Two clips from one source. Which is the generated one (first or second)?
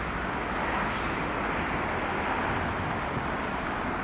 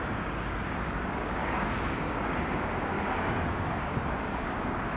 second